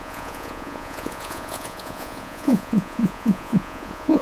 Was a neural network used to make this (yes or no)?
yes